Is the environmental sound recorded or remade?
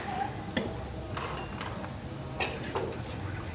recorded